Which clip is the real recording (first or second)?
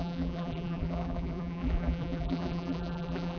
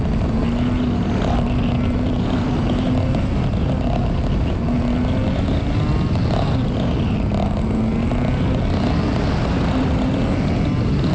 second